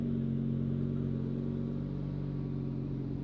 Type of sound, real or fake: real